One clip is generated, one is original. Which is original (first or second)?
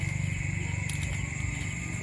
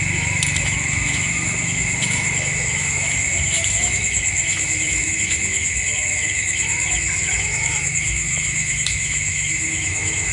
first